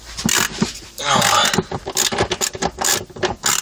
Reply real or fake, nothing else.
real